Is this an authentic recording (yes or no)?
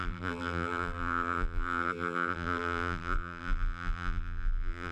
no